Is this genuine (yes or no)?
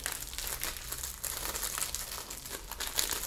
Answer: yes